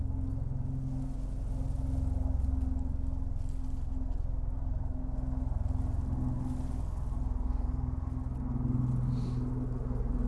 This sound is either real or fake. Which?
real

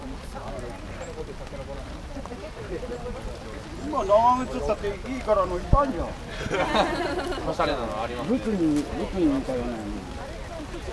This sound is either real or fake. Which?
real